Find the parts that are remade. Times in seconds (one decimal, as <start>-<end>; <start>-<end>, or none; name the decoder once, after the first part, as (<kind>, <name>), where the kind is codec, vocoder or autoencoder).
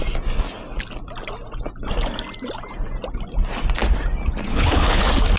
4.5-5.0 (codec, HILCodec)